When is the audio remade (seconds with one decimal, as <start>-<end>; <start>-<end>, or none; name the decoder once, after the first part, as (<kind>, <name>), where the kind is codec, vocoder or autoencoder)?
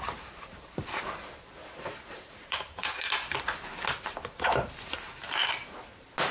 0.0-0.8 (vocoder, BigVGAN v2); 2.1-3.8